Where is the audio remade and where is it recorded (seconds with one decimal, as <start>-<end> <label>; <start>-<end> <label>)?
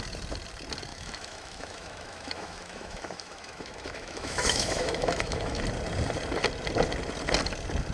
0.0-0.9 recorded; 0.9-5.6 remade; 5.6-7.9 recorded